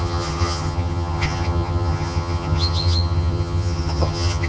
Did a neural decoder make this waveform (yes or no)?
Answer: yes